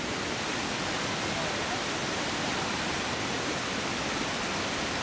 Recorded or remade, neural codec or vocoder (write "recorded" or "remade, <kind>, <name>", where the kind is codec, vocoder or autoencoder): recorded